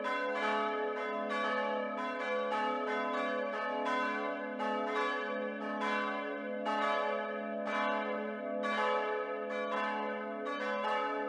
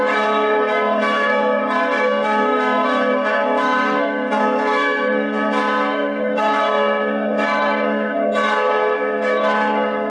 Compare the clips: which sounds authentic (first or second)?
first